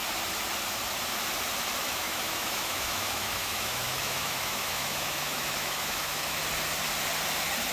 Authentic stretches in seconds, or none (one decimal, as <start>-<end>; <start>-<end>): 0.0-1.8; 6.4-7.7